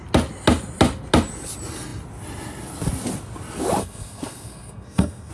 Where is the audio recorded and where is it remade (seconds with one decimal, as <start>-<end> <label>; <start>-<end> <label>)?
0.0-3.8 recorded; 3.8-5.3 remade